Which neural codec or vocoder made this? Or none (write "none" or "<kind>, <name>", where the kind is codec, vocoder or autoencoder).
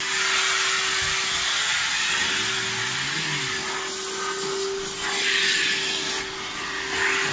none